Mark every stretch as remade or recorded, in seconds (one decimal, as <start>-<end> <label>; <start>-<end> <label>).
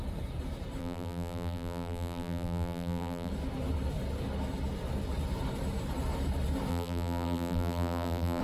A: 0.0-0.8 recorded; 0.8-3.3 remade; 3.3-6.7 recorded; 6.7-8.4 remade